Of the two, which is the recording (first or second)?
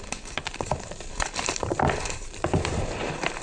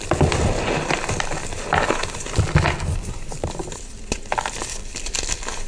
second